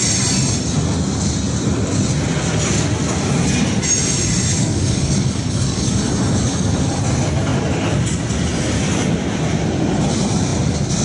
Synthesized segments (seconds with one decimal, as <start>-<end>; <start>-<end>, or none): 4.5-7.0